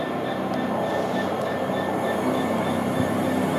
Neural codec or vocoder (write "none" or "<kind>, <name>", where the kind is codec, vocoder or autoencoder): none